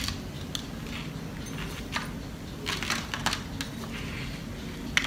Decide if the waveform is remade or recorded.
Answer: recorded